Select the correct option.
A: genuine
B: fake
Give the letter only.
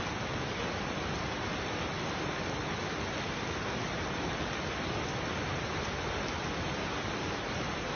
A